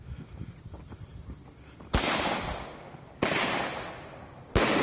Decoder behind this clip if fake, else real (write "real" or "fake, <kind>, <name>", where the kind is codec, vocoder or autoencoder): real